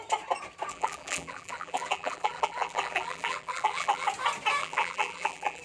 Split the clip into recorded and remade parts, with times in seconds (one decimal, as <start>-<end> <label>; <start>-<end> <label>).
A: 0.0-0.7 recorded; 0.7-4.1 remade; 4.1-4.6 recorded; 4.6-5.6 remade